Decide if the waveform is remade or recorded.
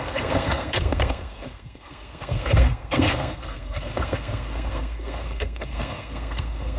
remade